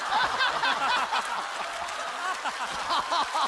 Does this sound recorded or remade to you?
recorded